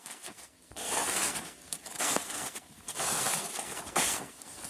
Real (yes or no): no